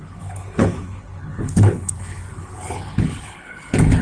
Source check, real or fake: fake